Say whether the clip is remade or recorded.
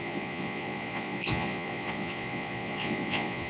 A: remade